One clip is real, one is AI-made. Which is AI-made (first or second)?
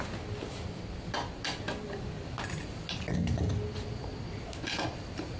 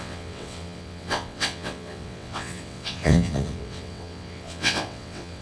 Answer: second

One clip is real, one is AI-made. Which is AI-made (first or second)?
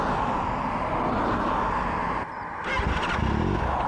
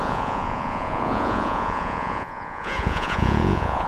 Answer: second